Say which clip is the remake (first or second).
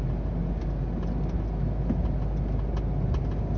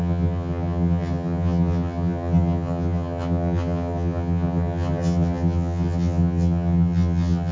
second